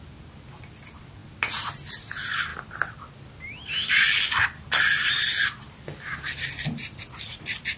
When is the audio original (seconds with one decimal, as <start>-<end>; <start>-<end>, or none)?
0.0-7.8